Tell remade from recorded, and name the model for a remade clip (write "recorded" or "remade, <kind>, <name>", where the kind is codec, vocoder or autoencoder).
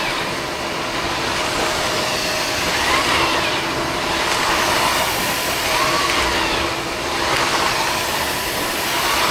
recorded